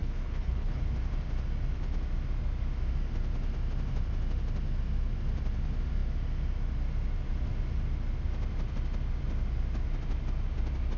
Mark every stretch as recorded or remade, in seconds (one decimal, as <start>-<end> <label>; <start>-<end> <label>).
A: 0.0-0.8 remade; 0.8-11.0 recorded